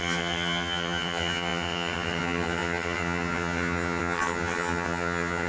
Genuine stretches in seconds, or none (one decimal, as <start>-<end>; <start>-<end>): none